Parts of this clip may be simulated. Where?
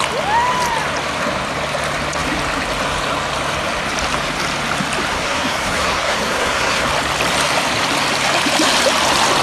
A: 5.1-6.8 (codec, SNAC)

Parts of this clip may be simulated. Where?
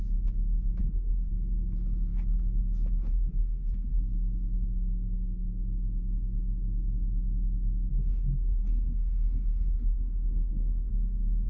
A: 0.8-1.3 (codec, SNAC); 3.0-4.0; 7.9-10.9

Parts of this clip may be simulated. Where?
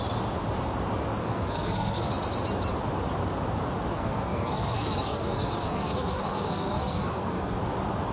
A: 1.2-2.1 (codec, SNAC); 3.9-7.6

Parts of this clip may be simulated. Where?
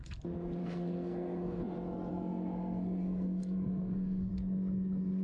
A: 0.6-1.6 (codec, SNAC); 2.1-4.3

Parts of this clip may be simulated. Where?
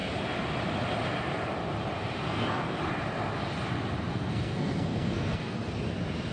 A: 2.3-2.8 (codec, SNAC); 4.1-5.7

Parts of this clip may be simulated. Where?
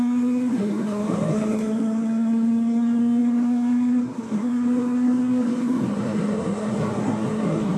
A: 0.0-7.8 (codec, SNAC)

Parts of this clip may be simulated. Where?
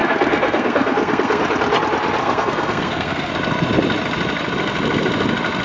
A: 0.0-1.4 (codec, SNAC); 2.2-3.3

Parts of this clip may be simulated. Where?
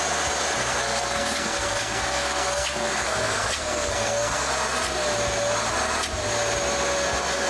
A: 0.6-4.5 (codec, SNAC)